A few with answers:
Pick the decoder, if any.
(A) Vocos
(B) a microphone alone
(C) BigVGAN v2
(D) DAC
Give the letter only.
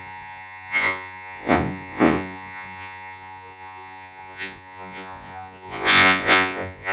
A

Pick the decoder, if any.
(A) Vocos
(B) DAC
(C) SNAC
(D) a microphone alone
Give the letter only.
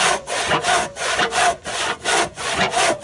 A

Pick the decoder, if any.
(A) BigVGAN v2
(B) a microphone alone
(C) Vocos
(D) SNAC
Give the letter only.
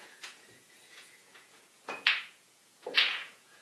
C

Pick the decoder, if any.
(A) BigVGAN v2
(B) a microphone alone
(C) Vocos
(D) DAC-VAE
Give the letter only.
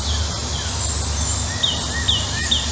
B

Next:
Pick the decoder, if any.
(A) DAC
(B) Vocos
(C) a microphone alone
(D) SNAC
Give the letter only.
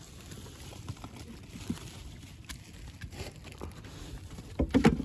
C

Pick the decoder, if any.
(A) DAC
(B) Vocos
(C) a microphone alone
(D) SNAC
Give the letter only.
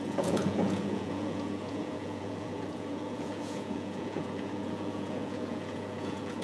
B